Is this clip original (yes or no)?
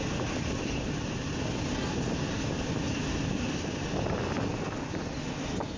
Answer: yes